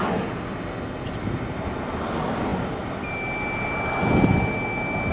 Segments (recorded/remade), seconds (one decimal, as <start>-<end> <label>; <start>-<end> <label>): 0.0-5.1 recorded